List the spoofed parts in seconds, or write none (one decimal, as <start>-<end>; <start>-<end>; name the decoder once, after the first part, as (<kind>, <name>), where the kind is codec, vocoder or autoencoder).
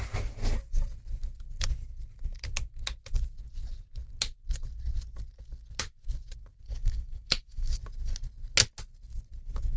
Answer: 6.7-7.8 (codec, DAC)